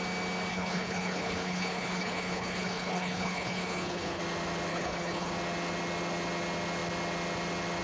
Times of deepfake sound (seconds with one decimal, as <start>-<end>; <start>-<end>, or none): 0.5-4.2; 4.7-5.3